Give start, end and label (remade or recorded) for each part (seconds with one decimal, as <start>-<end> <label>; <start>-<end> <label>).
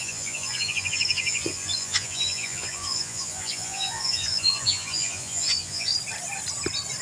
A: 0.0-5.9 remade; 5.9-7.0 recorded